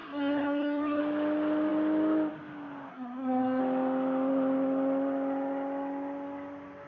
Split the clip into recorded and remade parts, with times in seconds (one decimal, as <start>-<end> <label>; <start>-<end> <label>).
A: 0.0-1.0 remade; 1.0-2.9 recorded; 2.9-3.6 remade; 3.6-6.9 recorded